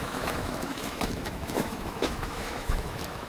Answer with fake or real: fake